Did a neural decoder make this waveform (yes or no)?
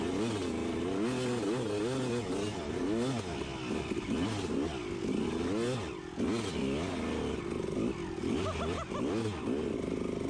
no